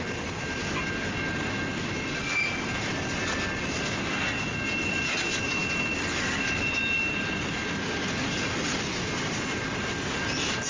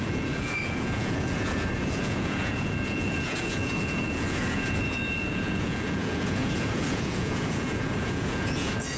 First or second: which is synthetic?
second